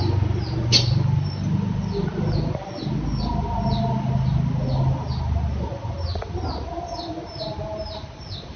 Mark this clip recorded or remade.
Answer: recorded